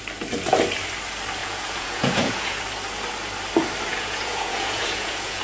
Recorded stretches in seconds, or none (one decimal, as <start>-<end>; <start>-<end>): 0.0-1.4; 2.6-3.9